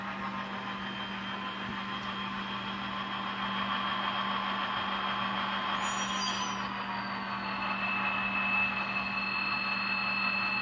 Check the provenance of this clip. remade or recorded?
recorded